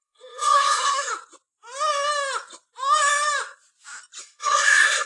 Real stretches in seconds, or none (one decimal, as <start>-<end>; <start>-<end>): 1.1-4.2